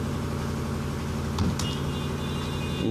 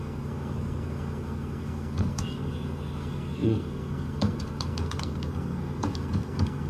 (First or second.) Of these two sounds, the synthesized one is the second